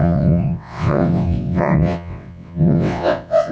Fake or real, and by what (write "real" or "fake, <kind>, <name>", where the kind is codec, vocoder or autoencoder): fake, vocoder, WaveNeXt